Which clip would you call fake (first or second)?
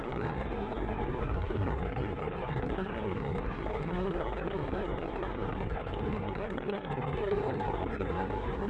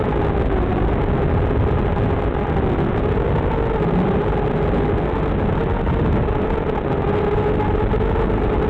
first